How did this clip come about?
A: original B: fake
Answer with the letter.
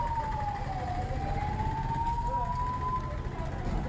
A